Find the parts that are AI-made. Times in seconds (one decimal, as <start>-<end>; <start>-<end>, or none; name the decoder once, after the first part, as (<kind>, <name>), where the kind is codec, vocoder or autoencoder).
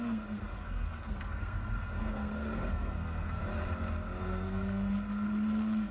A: 0.0-3.4 (codec, SNAC); 4.2-5.9